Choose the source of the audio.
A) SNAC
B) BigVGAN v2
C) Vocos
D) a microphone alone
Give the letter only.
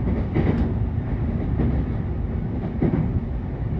D